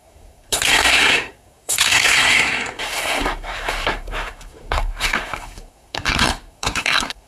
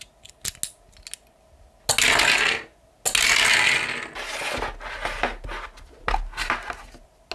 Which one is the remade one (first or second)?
first